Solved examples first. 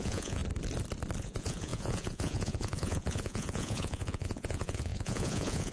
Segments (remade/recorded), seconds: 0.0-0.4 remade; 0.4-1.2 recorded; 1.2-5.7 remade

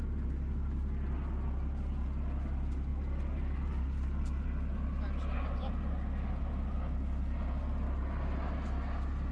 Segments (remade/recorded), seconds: 0.0-9.3 recorded

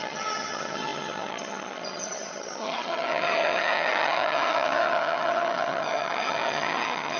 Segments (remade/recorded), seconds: 0.0-7.2 remade